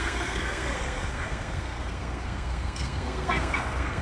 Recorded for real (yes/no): no